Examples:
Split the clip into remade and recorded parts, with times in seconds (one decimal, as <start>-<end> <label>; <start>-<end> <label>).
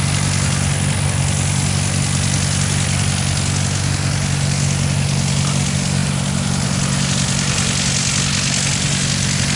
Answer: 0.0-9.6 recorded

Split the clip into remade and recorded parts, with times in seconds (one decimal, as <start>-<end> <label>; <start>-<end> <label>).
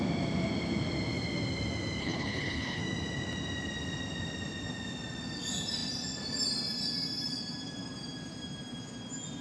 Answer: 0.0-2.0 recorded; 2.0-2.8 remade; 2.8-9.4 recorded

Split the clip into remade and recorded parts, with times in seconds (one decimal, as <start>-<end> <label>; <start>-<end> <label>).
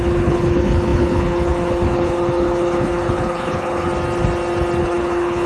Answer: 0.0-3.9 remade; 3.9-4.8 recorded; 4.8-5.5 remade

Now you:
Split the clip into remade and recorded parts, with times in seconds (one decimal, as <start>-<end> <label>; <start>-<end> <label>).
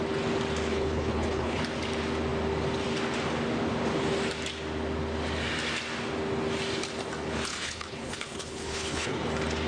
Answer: 0.0-0.7 recorded; 0.7-1.6 remade; 1.6-7.5 recorded; 7.5-9.2 remade; 9.2-9.7 recorded